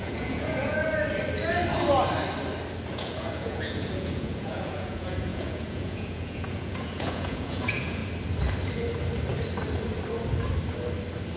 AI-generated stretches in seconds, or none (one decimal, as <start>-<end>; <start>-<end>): 0.0-0.8; 2.9-8.0